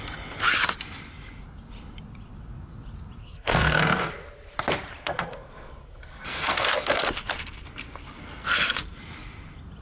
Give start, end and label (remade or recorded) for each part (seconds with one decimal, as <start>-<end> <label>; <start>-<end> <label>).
0.0-3.2 recorded; 3.2-4.1 remade; 4.1-5.0 recorded; 5.0-9.0 remade; 9.0-9.8 recorded